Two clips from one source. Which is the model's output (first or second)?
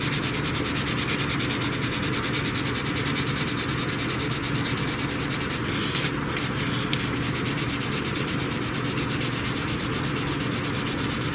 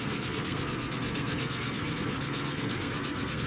second